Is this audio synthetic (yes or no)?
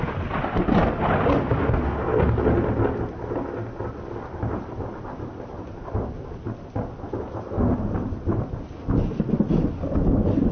no